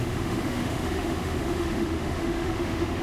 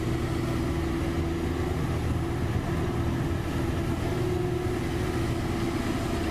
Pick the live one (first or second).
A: second